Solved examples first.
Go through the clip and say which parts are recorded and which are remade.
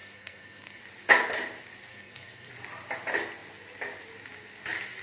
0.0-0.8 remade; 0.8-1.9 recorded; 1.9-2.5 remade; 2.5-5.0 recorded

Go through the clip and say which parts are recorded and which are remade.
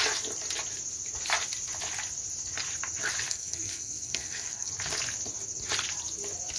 0.0-3.3 recorded; 3.3-4.7 remade; 4.7-6.6 recorded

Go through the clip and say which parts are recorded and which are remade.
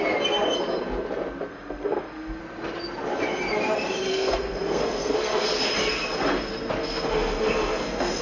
0.0-1.5 recorded; 1.5-2.4 remade; 2.4-4.1 recorded; 4.1-5.7 remade; 5.7-6.8 recorded; 6.8-8.2 remade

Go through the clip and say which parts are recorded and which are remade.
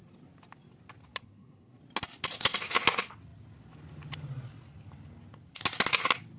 0.0-1.2 recorded; 1.2-1.8 remade; 1.8-6.4 recorded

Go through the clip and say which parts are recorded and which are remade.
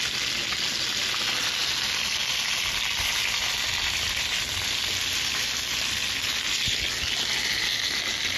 0.0-8.4 recorded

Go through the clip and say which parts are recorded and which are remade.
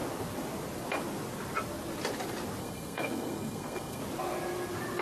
0.0-2.6 recorded; 2.6-4.0 remade; 4.0-5.0 recorded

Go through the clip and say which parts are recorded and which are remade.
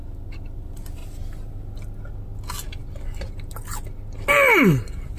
0.0-5.2 recorded